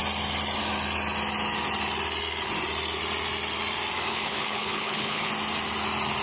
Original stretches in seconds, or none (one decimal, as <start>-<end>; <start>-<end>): 0.0-4.1; 5.3-6.2